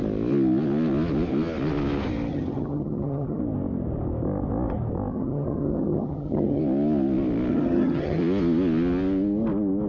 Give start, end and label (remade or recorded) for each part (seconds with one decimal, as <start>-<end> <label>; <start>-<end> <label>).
0.0-2.3 recorded; 2.3-3.4 remade; 3.4-5.1 recorded; 5.1-6.6 remade; 6.6-7.5 recorded; 7.5-8.2 remade; 8.2-9.9 recorded